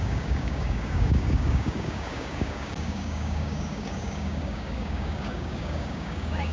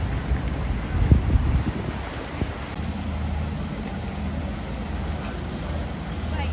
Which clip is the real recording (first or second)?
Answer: second